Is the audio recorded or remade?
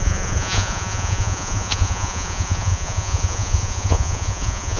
remade